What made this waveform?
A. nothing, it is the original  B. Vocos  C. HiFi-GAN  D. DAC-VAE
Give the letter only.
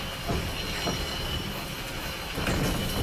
A